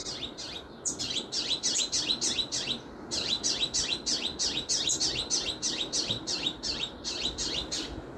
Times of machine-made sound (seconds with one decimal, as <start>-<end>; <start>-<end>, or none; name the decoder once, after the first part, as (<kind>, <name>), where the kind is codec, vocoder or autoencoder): none